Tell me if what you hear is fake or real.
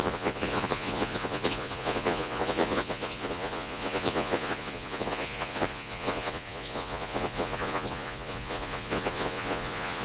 fake